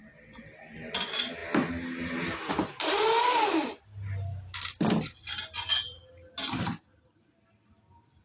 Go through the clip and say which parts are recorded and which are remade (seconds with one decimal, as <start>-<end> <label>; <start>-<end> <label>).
0.0-8.2 recorded